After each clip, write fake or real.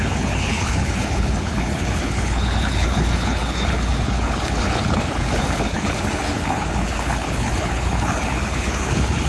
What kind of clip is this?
fake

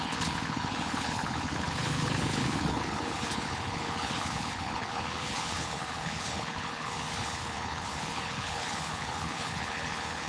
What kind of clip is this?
fake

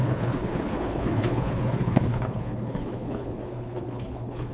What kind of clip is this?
fake